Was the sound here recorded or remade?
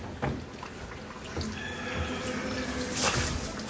recorded